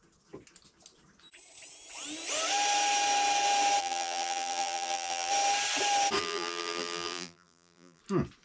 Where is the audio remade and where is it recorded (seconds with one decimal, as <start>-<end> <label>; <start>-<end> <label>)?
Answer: 0.0-3.8 recorded; 3.8-5.3 remade; 5.3-6.2 recorded; 6.2-8.0 remade; 8.0-8.4 recorded